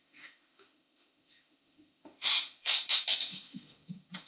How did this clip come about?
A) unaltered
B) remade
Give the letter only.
B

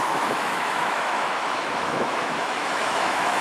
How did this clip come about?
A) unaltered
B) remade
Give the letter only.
B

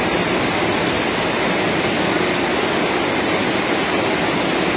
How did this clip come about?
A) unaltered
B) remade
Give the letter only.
A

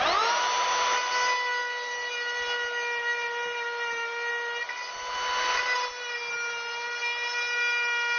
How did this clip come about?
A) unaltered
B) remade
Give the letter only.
A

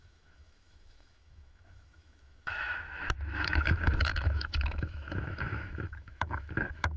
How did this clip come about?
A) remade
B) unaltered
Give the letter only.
A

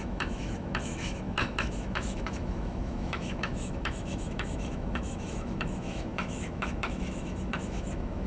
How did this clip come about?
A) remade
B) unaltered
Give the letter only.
A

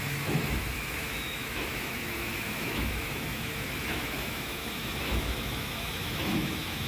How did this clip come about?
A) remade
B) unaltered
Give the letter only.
A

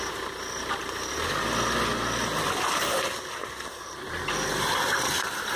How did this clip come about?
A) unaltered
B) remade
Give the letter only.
A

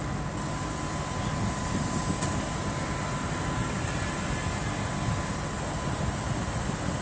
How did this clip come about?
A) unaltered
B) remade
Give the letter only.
A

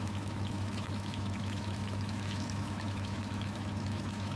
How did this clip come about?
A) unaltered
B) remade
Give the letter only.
B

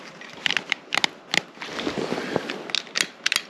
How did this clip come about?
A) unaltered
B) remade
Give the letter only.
A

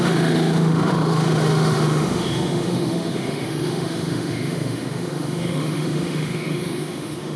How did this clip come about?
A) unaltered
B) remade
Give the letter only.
B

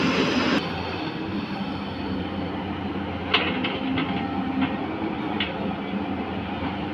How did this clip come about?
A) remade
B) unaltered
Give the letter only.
B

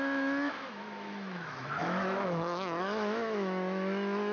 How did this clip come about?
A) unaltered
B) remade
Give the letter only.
B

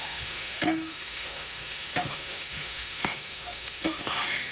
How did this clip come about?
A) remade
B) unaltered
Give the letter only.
A